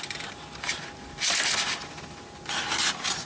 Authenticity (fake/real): real